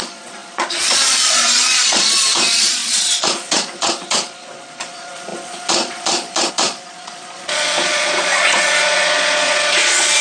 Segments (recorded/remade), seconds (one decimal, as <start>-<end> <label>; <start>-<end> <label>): 0.0-10.2 remade